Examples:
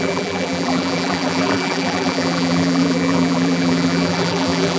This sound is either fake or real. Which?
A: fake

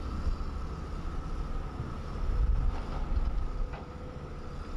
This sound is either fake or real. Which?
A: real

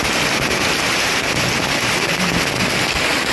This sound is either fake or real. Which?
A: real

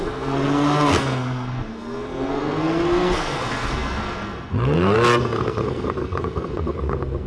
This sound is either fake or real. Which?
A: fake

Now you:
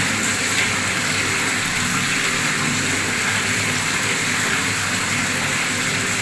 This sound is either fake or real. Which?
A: real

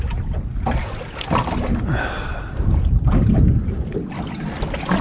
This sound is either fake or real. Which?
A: real